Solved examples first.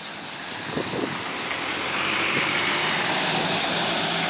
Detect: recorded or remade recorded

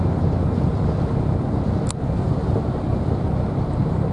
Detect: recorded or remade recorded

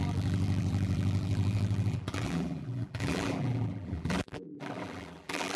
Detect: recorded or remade remade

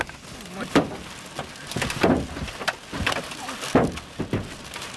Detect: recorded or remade recorded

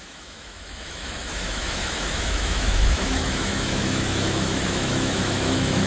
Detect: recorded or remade remade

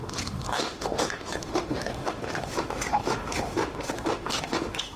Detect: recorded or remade remade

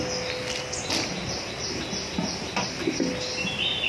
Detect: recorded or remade recorded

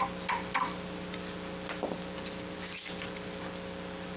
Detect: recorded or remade recorded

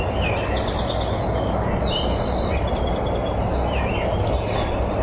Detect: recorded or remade recorded